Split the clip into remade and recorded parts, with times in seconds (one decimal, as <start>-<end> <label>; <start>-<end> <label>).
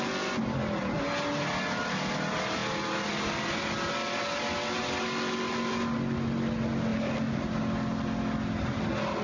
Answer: 0.0-9.2 recorded